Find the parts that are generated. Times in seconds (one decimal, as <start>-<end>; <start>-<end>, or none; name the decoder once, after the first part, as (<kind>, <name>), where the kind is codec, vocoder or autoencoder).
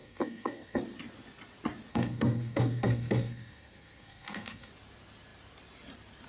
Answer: 0.0-0.8 (codec, SNAC); 1.9-4.7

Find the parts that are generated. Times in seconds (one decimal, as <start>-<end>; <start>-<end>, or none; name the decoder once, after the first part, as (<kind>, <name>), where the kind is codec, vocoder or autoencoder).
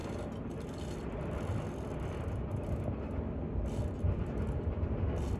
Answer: none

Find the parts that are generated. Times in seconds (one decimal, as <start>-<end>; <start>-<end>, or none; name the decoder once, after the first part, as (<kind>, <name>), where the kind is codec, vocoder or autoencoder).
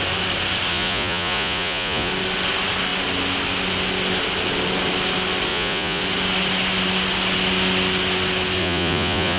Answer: 0.7-2.1 (vocoder, Vocos); 5.5-6.0; 8.6-9.4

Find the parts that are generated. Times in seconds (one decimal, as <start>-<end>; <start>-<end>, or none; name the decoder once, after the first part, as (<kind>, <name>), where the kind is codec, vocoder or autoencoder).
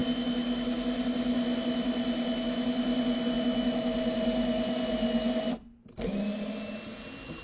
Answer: none